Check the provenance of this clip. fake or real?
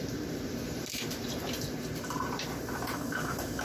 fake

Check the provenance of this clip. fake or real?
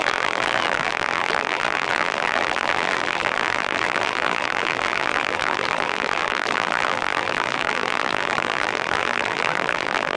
fake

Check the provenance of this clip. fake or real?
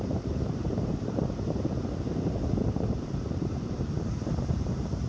fake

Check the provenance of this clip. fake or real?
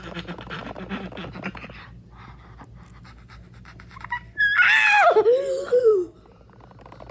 real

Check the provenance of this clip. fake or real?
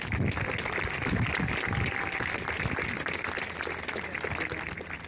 real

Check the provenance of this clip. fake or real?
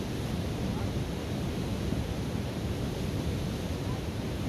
real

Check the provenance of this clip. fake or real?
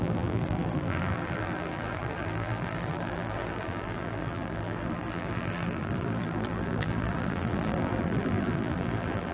fake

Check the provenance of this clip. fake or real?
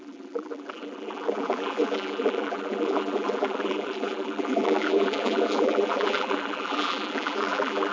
fake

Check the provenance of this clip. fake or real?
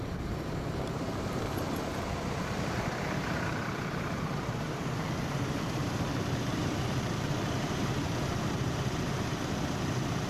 fake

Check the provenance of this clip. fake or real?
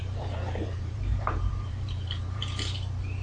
fake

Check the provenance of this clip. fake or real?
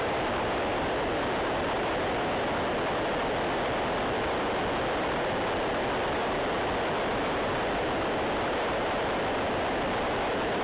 real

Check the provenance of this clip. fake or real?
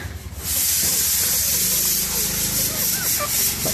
real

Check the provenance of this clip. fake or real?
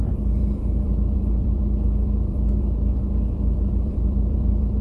fake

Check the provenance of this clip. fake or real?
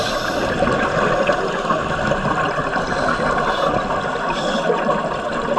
real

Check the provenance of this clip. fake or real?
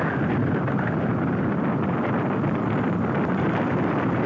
fake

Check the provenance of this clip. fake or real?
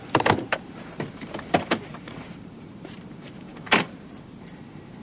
fake